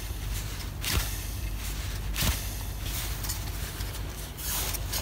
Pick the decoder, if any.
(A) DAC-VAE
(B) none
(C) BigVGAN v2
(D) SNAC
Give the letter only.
B